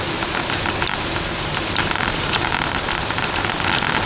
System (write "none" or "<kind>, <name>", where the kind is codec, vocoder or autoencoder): vocoder, BigVGAN v2